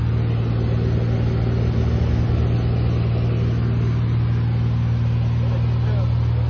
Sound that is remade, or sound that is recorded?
recorded